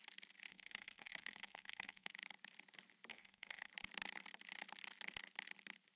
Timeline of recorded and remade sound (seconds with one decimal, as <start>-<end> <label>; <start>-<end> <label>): 0.0-0.5 recorded; 0.5-2.1 remade; 2.1-3.1 recorded; 3.1-3.7 remade; 3.7-6.0 recorded